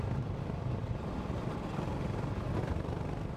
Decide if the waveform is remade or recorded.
recorded